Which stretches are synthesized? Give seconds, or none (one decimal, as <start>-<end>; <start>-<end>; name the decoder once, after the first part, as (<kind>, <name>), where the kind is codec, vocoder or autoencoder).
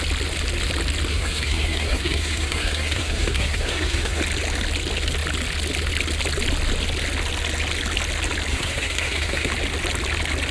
1.1-4.2 (codec, SNAC); 8.5-9.5